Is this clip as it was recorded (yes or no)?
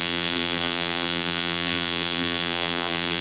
no